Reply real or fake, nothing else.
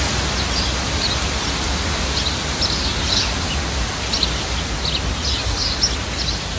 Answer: real